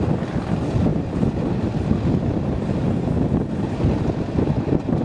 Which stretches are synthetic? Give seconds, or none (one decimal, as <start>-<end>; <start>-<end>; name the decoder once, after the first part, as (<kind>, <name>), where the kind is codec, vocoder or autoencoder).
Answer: none